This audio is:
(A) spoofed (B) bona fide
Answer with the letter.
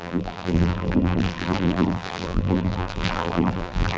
A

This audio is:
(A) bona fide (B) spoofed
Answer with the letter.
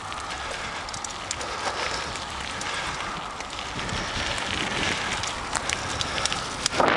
A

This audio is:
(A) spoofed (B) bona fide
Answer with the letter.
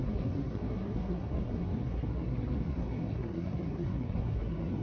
A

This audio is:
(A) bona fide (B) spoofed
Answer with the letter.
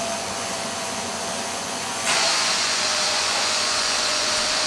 B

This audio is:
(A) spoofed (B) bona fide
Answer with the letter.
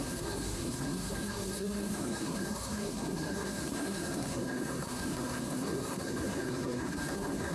A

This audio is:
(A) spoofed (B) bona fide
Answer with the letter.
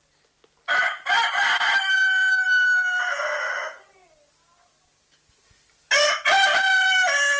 B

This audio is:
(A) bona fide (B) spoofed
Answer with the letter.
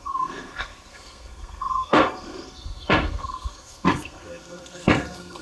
B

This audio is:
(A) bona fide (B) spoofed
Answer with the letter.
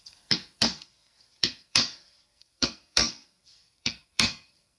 B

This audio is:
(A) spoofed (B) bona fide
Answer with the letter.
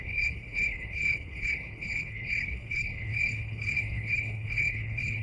A